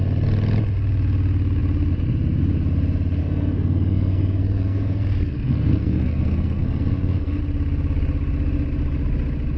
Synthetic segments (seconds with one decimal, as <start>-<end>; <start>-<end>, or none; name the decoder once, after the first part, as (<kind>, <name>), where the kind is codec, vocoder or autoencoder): 3.2-7.4 (codec, SNAC)